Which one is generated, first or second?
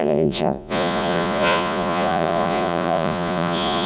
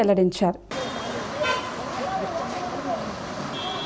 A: first